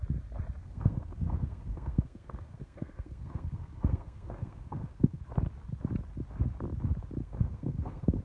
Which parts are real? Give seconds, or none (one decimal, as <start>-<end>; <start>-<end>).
0.0-0.6; 5.2-7.2